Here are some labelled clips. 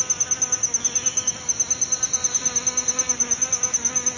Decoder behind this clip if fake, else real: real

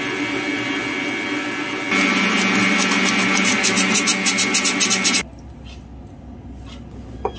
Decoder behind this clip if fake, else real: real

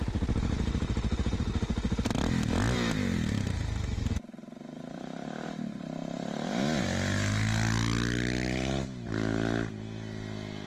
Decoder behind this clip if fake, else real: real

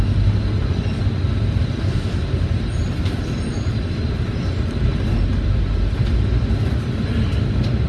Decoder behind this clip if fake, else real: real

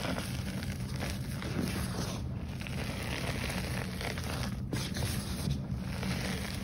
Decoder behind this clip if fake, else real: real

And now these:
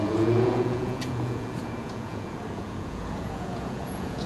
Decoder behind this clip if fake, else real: fake, vocoder, Vocos